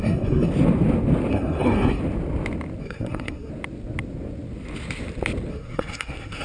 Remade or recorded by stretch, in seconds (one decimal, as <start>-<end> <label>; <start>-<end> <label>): 0.0-0.5 remade; 0.5-1.3 recorded; 1.3-2.0 remade; 2.0-2.8 recorded; 2.8-3.5 remade; 3.5-5.5 recorded; 5.5-6.4 remade